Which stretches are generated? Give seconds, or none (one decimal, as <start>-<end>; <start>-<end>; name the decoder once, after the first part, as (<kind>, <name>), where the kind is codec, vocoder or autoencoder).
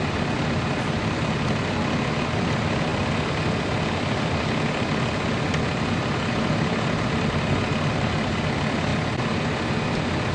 none